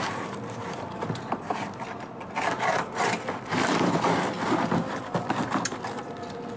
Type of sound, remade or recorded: recorded